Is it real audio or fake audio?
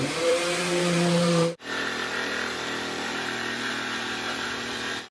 fake